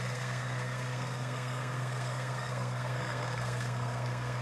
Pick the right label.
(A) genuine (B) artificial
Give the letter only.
B